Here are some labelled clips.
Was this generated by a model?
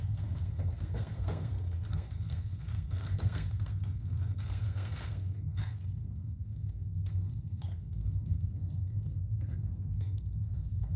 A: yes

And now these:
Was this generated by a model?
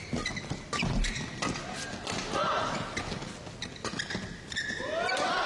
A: no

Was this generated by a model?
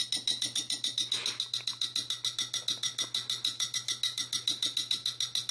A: no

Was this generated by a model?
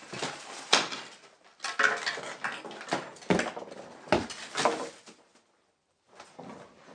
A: no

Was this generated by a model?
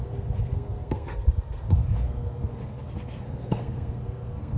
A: yes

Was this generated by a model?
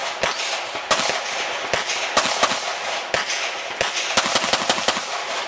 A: no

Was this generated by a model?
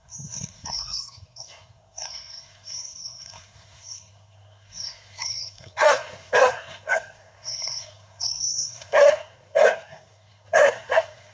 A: yes